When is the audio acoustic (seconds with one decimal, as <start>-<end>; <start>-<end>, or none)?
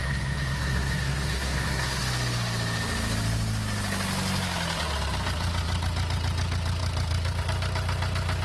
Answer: 2.0-8.4